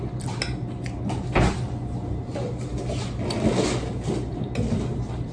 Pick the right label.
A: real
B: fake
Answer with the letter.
A